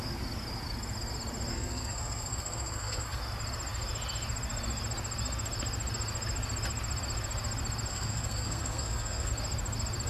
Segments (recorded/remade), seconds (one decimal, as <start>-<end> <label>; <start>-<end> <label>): 0.0-1.5 recorded; 1.5-3.2 remade; 3.2-7.9 recorded; 7.9-9.3 remade; 9.3-10.1 recorded